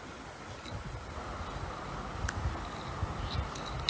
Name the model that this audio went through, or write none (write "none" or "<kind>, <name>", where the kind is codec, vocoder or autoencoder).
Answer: none